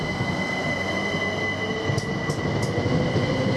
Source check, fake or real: real